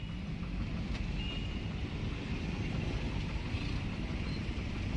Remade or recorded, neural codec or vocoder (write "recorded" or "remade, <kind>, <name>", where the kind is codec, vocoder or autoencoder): recorded